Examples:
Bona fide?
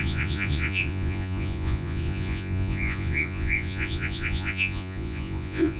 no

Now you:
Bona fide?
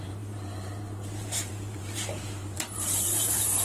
no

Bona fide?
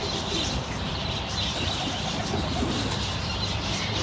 yes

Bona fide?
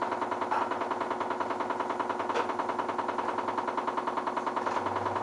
yes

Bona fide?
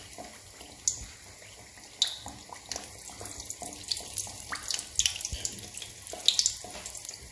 yes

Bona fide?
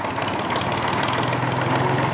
yes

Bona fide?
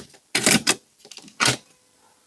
yes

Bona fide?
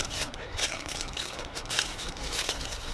no